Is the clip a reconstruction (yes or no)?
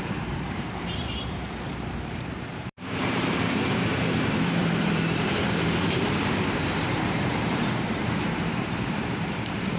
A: yes